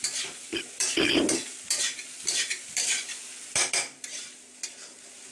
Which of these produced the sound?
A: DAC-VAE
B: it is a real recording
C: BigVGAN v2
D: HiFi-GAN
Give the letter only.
C